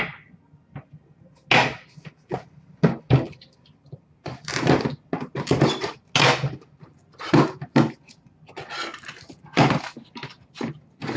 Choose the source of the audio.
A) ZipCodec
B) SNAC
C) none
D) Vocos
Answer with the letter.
C